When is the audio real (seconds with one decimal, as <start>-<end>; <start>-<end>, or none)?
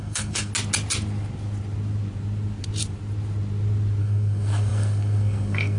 0.5-4.0